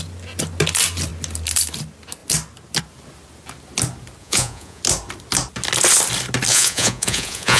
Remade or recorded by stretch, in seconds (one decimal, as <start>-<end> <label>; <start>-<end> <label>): 0.0-4.2 recorded; 4.2-4.8 remade; 4.8-6.5 recorded; 6.5-7.6 remade